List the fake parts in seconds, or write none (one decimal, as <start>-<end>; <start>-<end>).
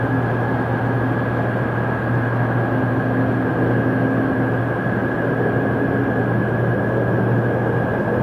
none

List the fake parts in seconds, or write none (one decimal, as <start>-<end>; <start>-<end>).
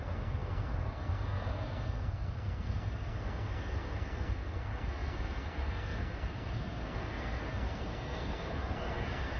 0.0-9.4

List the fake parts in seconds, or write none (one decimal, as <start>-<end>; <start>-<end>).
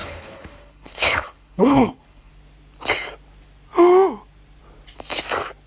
0.0-2.3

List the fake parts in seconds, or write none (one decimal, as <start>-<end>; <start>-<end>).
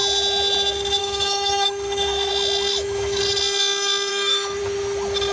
1.0-2.3; 2.7-3.2; 4.1-4.6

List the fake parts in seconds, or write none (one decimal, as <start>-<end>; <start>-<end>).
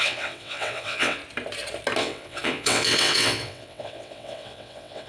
0.0-1.2; 2.0-5.1